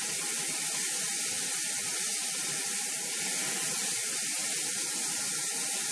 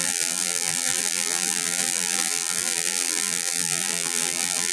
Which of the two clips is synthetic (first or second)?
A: second